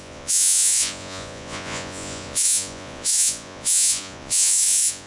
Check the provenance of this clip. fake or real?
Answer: fake